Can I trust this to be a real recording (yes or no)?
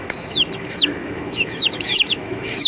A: no